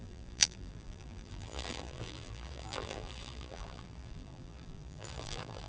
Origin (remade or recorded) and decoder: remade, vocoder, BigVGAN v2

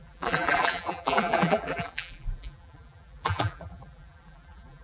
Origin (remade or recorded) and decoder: remade, vocoder, BigVGAN v2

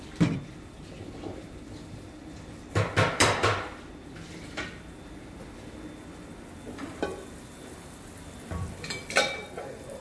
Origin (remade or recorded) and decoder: recorded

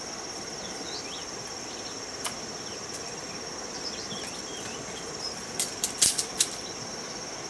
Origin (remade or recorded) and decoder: remade, vocoder, BigVGAN v2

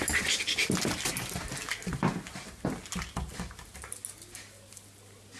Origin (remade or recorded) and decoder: recorded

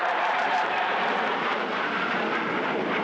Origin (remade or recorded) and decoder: remade, vocoder, BigVGAN v2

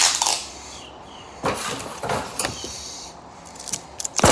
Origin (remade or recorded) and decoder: remade, vocoder, BigVGAN v2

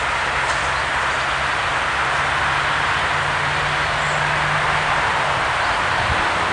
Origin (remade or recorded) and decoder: recorded